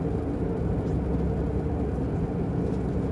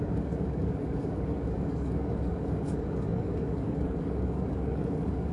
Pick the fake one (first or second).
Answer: second